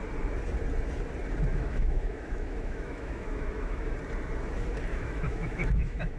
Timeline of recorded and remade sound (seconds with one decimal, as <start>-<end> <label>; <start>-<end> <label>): 0.0-1.5 recorded; 1.5-3.9 remade; 3.9-4.9 recorded; 4.9-6.2 remade